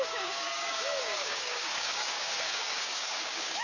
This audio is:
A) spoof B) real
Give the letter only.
A